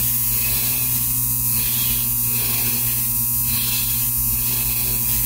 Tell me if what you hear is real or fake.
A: real